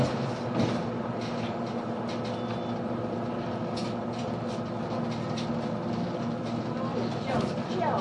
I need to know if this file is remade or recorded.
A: recorded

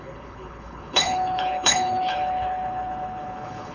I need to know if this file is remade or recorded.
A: remade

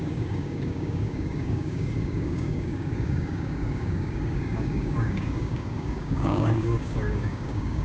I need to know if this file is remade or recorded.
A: remade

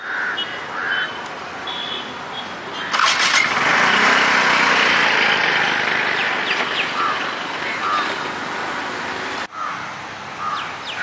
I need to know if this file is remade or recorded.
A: recorded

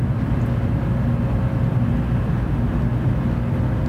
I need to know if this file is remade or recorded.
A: recorded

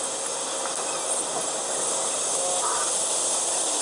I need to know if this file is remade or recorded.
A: recorded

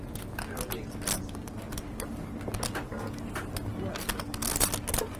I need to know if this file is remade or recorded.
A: recorded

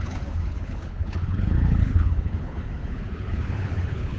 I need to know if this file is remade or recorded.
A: remade